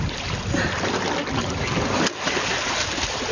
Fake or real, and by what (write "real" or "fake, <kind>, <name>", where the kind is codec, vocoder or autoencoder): real